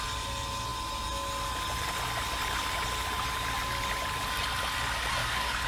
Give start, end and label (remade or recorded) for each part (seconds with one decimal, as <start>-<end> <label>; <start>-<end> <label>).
0.0-5.2 recorded; 5.2-5.7 remade